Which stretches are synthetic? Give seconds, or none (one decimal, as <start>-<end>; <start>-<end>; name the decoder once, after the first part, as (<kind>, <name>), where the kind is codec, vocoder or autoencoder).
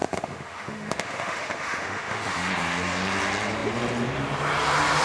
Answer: 0.0-2.5 (autoencoder, DAC-VAE)